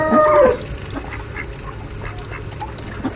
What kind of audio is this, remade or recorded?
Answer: recorded